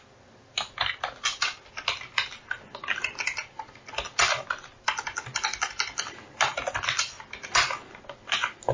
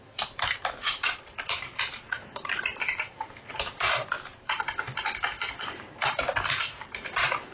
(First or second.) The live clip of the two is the first